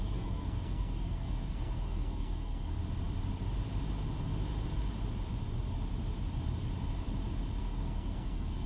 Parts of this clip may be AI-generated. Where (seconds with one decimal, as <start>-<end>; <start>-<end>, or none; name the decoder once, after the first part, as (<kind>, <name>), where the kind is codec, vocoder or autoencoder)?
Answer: 0.0-2.8 (codec, SNAC); 7.6-8.7